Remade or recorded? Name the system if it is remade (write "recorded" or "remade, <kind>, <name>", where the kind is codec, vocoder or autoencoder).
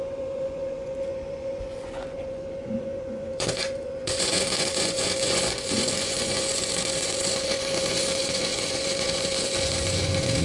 remade, vocoder, Vocos